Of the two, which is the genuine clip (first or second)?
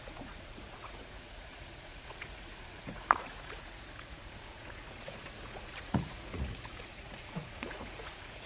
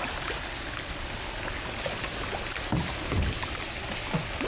second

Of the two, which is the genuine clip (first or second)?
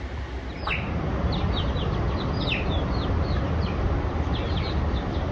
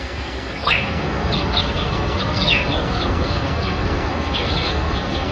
first